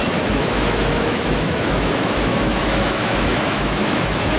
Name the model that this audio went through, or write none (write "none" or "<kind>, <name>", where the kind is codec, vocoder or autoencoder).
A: autoencoder, DAC-VAE